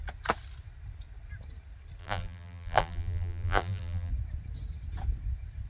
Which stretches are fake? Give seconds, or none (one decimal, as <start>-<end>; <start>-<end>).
2.0-4.1